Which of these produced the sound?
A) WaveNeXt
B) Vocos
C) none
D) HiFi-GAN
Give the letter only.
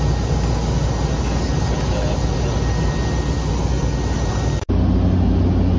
C